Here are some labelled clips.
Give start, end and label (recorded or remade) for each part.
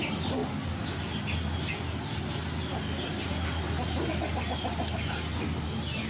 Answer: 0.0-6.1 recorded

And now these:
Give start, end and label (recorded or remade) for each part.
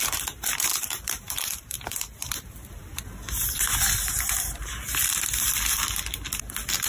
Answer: 0.0-5.0 remade; 5.0-6.9 recorded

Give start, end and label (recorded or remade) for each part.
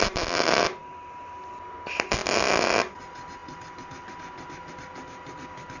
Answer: 0.0-5.8 recorded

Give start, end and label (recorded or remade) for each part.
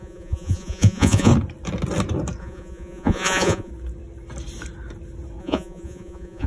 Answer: 0.0-1.3 remade; 1.3-2.4 recorded; 2.4-3.7 remade; 3.7-5.4 recorded; 5.4-6.5 remade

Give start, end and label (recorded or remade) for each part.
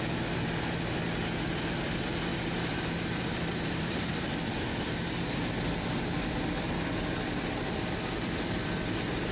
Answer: 0.0-2.3 recorded; 2.3-4.2 remade; 4.2-9.3 recorded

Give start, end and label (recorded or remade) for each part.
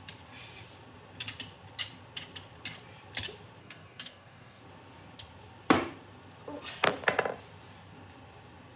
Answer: 0.0-3.6 recorded; 3.6-4.6 remade; 4.6-8.8 recorded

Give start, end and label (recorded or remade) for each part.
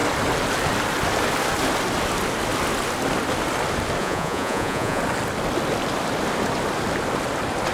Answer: 0.0-4.0 recorded; 4.0-5.0 remade; 5.0-7.7 recorded